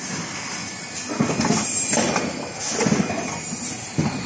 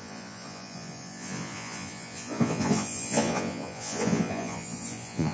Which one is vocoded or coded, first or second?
second